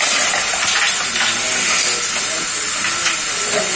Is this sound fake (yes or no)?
no